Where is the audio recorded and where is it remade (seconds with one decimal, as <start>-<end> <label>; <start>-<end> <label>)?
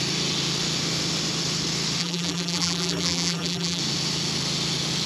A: 0.0-2.0 recorded; 2.0-3.8 remade; 3.8-5.1 recorded